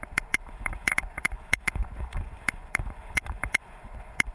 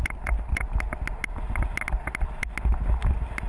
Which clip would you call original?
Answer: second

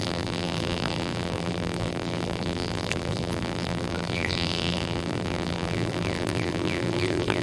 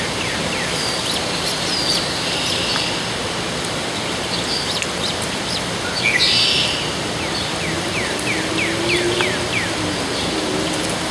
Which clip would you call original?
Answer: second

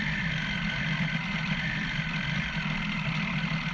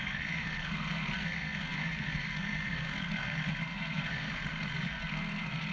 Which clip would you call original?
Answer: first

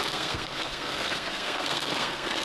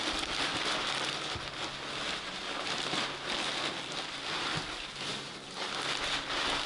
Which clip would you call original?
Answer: second